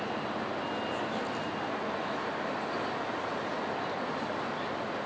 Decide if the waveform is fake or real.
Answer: real